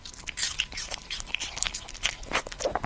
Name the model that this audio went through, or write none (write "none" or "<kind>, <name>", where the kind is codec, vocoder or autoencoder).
none